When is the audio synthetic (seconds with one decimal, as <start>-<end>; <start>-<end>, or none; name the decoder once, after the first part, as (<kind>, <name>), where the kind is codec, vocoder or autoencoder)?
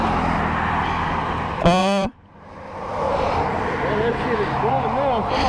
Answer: 1.8-3.7 (vocoder, BigVGAN v2)